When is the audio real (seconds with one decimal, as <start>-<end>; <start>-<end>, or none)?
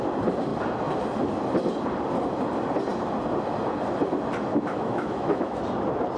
0.0-4.5; 5.6-6.2